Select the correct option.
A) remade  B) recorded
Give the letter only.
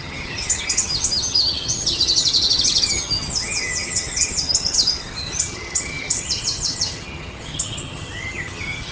A